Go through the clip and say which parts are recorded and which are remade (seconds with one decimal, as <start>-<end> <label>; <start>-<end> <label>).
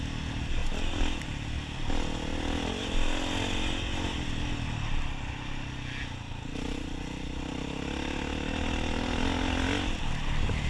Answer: 0.0-10.7 recorded